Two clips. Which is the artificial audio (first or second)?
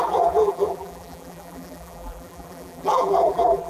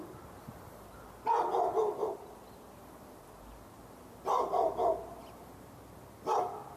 first